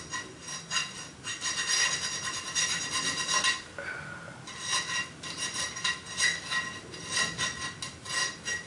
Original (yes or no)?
yes